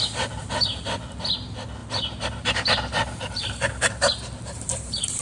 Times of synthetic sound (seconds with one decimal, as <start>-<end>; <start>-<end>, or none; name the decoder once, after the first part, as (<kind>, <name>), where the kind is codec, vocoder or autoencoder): 1.8-5.2 (vocoder, BigVGAN v2)